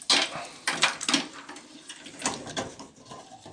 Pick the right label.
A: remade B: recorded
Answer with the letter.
B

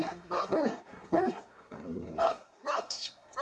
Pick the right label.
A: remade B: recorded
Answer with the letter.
A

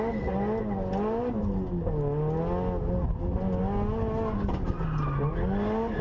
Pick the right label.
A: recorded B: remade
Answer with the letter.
A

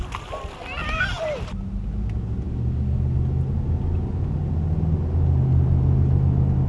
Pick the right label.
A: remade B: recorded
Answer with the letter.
B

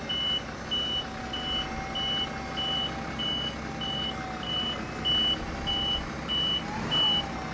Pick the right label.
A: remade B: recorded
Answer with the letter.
B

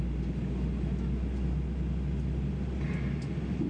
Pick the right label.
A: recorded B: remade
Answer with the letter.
A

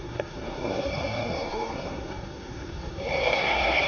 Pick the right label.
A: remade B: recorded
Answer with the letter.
A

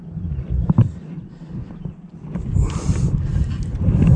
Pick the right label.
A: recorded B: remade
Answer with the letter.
A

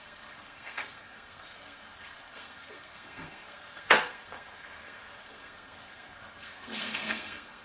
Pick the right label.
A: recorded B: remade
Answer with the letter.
B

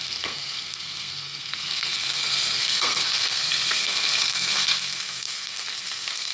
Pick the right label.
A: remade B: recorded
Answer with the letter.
A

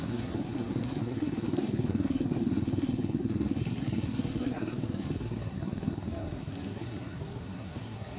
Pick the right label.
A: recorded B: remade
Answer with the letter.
B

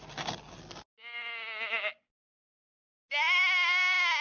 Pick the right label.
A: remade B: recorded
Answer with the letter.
B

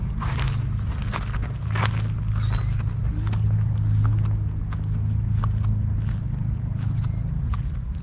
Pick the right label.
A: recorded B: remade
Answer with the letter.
A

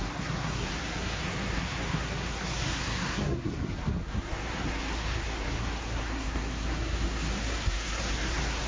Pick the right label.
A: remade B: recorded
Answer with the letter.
A